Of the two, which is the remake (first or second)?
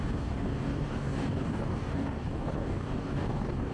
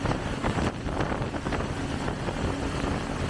first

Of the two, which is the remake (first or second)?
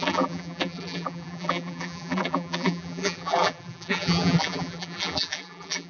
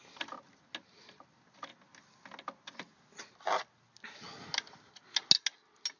first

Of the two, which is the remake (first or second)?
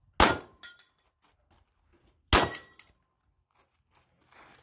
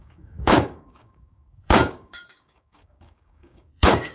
second